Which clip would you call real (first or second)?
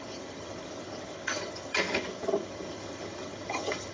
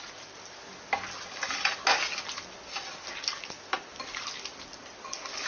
second